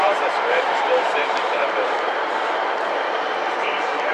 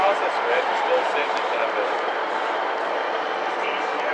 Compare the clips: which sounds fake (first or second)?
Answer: first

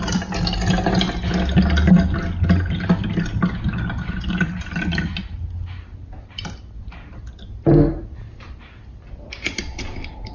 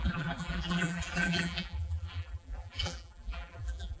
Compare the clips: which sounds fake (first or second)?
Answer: second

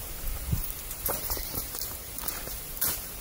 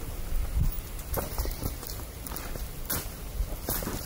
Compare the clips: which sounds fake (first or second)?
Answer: first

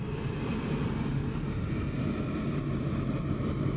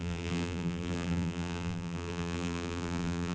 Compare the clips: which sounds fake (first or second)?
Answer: second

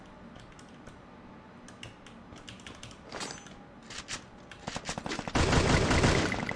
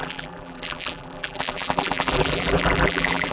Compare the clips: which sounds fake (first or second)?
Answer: second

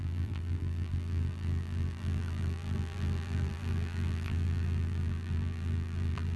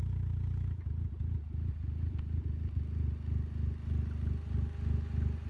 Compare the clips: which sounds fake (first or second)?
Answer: first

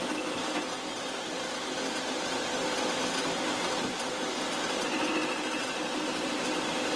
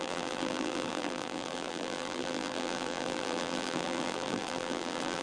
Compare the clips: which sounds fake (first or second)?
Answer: second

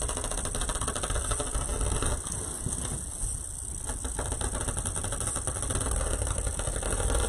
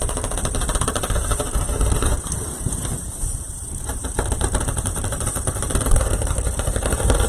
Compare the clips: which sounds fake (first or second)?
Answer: second